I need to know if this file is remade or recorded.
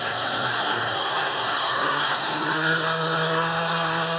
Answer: remade